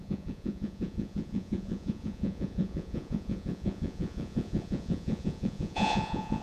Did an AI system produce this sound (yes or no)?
yes